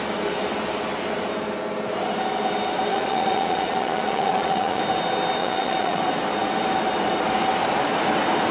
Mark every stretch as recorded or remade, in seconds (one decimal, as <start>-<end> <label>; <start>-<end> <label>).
0.0-2.9 recorded; 2.9-4.8 remade; 4.8-5.4 recorded; 5.4-6.0 remade; 6.0-8.5 recorded